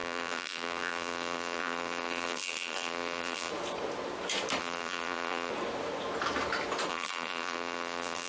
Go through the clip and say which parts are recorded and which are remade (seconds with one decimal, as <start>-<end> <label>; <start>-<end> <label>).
0.0-3.5 remade; 3.5-4.6 recorded; 4.6-5.5 remade; 5.5-6.9 recorded; 6.9-8.3 remade